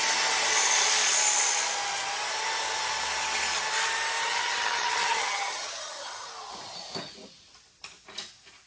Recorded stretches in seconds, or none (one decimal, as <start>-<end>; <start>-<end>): 0.0-4.2; 6.3-8.7

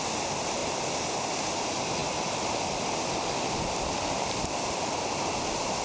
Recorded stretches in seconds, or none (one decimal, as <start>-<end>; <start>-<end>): 0.0-0.6; 1.1-2.0; 5.0-5.8

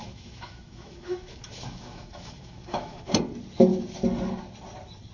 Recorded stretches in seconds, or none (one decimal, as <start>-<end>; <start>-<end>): 3.1-5.1

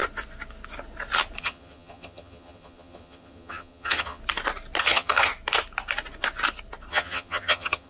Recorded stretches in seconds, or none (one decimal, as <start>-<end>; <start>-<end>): 0.0-1.4; 4.2-4.8; 5.3-6.9

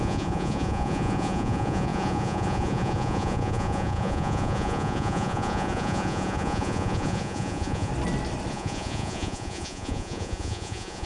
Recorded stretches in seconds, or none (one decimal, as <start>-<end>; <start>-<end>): 7.9-8.5

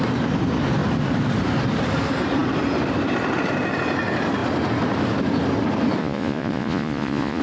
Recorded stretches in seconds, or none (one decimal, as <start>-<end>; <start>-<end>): 0.0-6.0

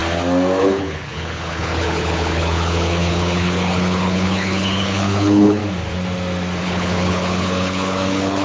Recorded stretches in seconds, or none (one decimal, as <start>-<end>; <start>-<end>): 0.0-0.6; 5.6-6.6

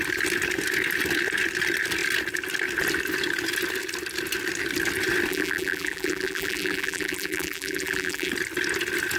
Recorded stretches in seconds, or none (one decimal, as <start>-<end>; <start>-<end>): 0.0-5.3; 8.3-9.2